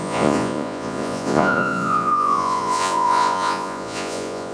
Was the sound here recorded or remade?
remade